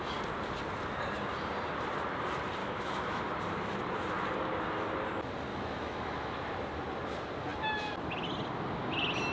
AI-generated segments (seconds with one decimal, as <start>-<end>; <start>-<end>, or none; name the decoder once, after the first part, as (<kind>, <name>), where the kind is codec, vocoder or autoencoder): 2.6-3.2 (autoencoder, DAC-VAE); 5.5-6.3